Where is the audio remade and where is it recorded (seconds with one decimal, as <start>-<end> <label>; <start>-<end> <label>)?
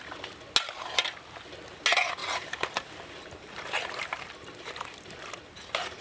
0.0-2.2 recorded; 2.2-6.0 remade